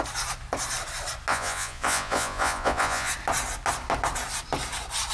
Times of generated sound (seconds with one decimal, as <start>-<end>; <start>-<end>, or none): 1.3-3.1